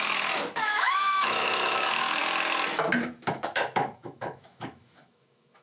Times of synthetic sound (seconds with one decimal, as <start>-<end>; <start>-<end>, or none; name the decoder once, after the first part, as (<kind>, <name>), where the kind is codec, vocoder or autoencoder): 0.0-2.2 (autoencoder, DAC-VAE); 3.3-5.6